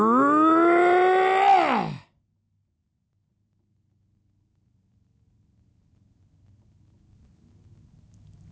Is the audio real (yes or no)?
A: yes